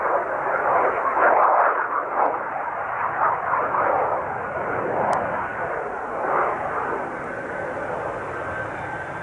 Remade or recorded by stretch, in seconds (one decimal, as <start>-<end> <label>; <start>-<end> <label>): 0.0-9.2 recorded